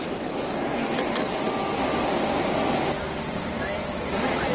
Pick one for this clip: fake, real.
real